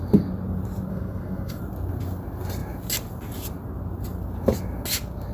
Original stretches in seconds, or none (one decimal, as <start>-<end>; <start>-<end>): 0.0-0.9; 1.6-5.3